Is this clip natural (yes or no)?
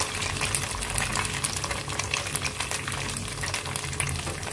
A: yes